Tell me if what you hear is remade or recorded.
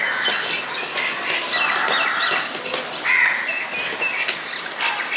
recorded